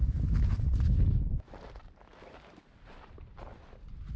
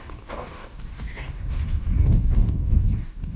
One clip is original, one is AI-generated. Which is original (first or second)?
first